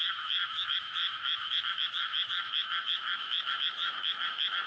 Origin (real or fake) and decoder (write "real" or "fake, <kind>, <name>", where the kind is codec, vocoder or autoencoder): fake, autoencoder, DAC-VAE